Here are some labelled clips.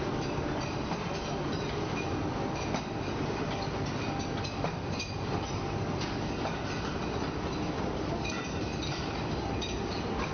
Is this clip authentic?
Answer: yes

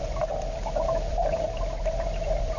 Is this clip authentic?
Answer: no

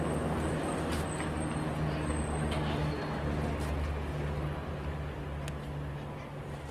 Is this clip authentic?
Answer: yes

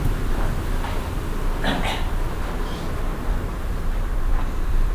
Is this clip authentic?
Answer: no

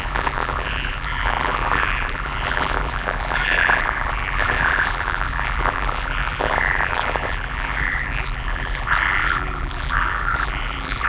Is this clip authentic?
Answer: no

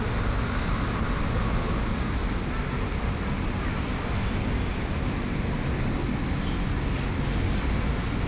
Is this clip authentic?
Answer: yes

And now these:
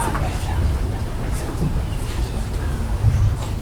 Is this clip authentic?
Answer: yes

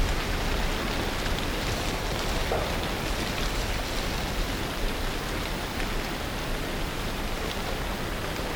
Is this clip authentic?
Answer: yes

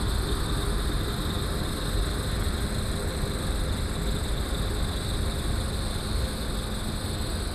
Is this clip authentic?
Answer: yes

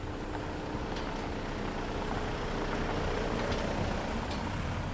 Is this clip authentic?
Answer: yes